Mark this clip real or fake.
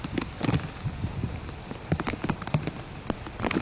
fake